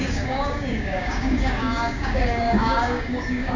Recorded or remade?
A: remade